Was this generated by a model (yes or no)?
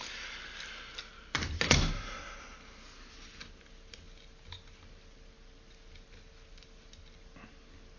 no